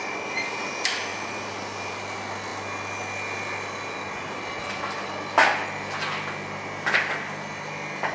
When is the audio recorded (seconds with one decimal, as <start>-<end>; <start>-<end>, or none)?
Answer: 0.0-1.1; 2.0-8.1

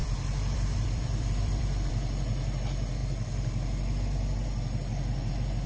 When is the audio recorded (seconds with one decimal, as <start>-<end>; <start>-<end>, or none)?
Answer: 1.9-5.7